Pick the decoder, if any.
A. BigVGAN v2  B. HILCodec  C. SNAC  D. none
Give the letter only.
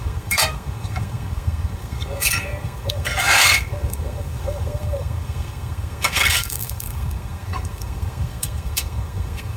C